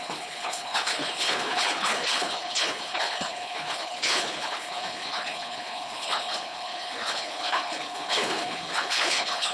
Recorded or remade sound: remade